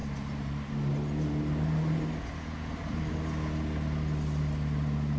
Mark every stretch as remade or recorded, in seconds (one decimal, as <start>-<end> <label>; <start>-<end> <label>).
0.0-5.2 recorded